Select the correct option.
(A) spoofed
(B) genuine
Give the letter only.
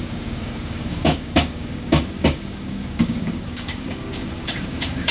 A